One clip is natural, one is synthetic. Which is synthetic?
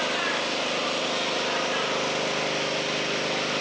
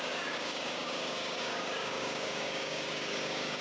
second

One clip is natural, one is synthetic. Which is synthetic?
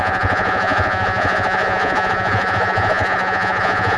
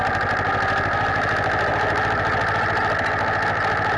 first